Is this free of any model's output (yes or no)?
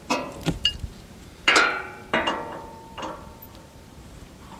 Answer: no